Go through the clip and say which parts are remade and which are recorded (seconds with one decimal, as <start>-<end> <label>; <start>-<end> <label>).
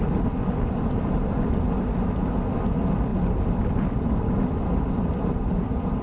0.0-6.0 recorded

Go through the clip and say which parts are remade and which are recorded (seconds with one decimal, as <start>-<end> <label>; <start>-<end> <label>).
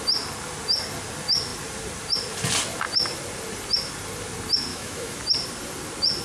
0.0-4.7 recorded; 4.7-5.2 remade; 5.2-6.2 recorded